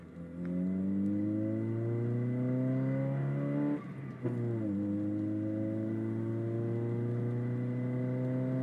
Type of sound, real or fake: real